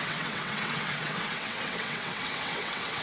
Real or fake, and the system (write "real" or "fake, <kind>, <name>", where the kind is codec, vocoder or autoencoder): fake, vocoder, WaveNeXt